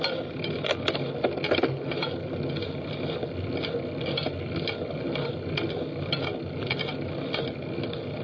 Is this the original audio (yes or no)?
yes